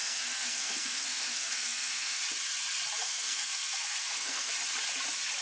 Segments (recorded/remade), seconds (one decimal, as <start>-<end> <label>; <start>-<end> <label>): 0.0-2.2 remade; 2.2-3.0 recorded; 3.0-4.5 remade; 4.5-5.4 recorded